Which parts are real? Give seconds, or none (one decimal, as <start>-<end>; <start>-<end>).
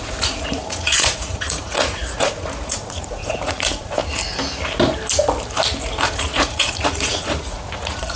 4.0-6.1